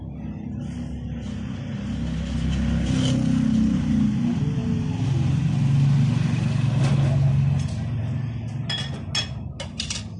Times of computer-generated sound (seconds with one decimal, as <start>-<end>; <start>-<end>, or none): none